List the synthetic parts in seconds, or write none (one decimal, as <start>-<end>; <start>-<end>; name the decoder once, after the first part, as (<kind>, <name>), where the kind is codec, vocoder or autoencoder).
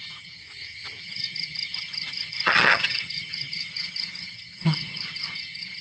0.0-0.4 (vocoder, HiFi-GAN); 1.0-5.8